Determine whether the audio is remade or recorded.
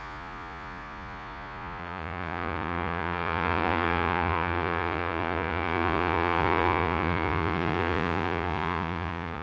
remade